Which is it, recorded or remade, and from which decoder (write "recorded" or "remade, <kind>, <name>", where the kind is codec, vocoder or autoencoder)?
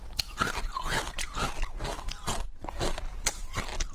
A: recorded